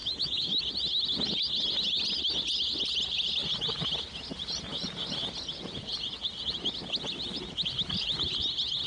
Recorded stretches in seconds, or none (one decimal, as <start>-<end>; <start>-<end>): 0.6-8.9